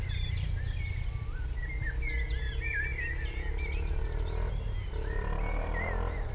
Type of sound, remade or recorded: recorded